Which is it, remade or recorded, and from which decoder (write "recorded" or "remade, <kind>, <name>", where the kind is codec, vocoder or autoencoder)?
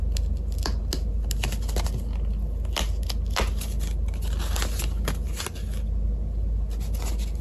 recorded